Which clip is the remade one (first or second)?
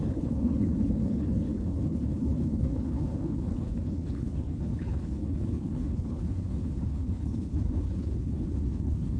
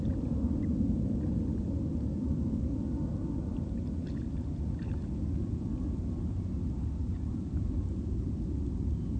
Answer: first